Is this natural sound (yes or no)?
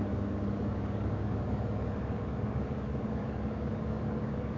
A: no